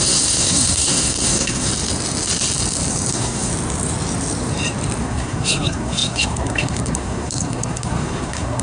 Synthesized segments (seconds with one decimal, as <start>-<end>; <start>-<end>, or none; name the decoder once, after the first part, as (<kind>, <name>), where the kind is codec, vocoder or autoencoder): 0.0-1.7 (codec, SNAC); 3.1-3.5; 5.0-8.6